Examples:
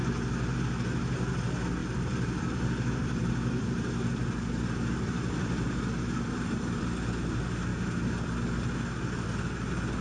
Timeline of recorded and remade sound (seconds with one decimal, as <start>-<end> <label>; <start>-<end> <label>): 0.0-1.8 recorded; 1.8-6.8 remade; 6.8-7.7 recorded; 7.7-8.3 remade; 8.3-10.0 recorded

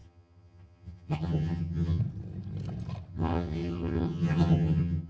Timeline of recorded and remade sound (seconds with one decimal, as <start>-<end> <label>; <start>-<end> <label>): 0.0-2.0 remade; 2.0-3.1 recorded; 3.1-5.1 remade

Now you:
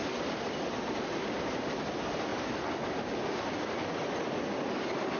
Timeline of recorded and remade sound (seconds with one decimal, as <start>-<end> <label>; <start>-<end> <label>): 0.0-5.2 recorded

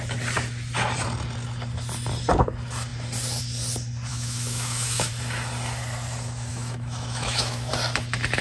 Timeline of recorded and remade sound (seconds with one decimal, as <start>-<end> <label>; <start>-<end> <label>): 0.0-4.1 recorded; 4.1-5.1 remade; 5.1-6.5 recorded; 6.5-7.7 remade; 7.7-8.4 recorded

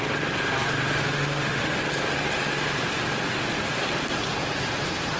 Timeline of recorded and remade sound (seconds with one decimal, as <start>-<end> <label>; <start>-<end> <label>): 0.0-1.0 recorded; 1.0-1.8 remade; 1.8-5.2 recorded

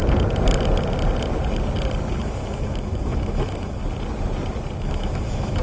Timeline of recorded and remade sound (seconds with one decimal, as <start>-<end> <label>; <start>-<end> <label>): 0.0-2.2 recorded; 2.2-3.8 remade; 3.8-4.8 recorded; 4.8-5.6 remade

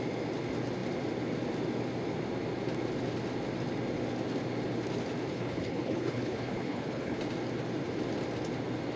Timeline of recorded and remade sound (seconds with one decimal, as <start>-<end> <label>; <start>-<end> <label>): 0.0-5.3 recorded; 5.3-7.2 remade; 7.2-9.0 recorded

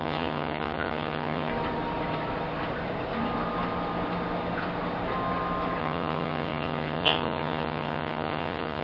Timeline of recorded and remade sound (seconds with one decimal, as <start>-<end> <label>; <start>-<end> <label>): 0.0-1.5 remade; 1.5-5.8 recorded; 5.8-8.8 remade